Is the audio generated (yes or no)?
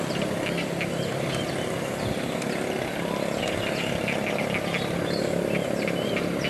no